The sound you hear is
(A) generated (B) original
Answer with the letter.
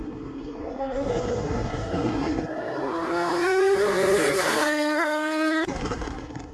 A